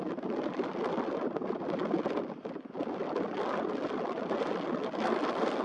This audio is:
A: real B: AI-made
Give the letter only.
A